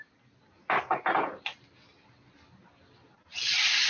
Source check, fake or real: real